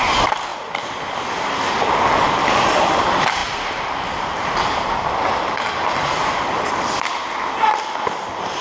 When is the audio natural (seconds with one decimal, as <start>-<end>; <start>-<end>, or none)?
0.0-8.6